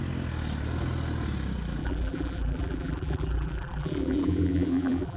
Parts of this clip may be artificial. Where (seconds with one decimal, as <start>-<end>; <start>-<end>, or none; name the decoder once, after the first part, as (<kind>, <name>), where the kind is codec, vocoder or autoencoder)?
1.8-5.2 (vocoder, BigVGAN v2)